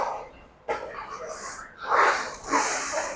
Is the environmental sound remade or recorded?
recorded